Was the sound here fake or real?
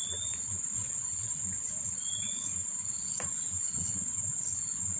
fake